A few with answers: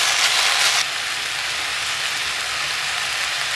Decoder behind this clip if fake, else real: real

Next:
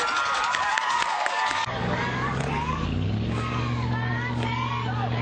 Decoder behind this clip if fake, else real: fake, codec, DAC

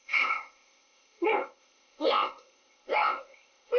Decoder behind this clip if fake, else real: fake, codec, ZipCodec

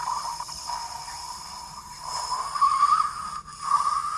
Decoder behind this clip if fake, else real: real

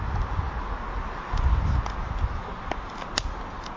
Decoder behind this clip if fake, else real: real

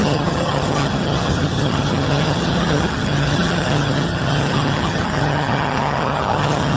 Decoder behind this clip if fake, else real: fake, vocoder, HiFi-GAN